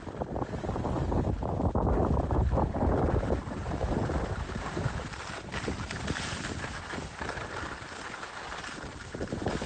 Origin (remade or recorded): recorded